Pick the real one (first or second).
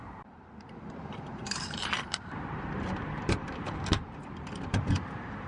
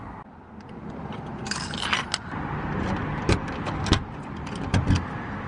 second